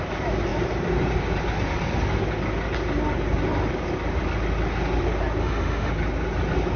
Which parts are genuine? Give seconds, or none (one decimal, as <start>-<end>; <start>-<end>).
0.0-5.4; 5.9-6.8